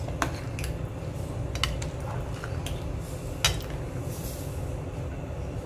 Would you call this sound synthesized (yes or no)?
no